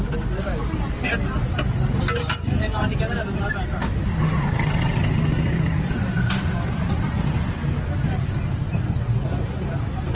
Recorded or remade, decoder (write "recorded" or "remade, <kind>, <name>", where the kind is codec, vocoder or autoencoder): recorded